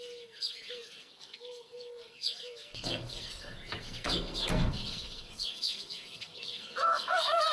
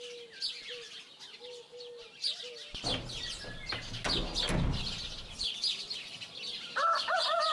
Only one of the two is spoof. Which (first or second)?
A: first